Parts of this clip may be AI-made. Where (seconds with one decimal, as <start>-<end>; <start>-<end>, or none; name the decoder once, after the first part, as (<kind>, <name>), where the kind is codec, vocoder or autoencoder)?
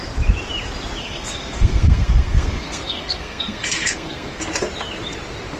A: 1.0-4.4 (codec, SNAC)